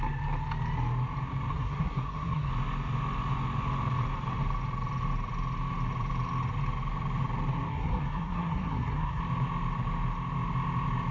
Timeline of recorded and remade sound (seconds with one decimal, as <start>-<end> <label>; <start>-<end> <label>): 0.0-1.5 recorded; 1.5-2.5 remade; 2.5-7.7 recorded; 7.7-9.2 remade; 9.2-11.1 recorded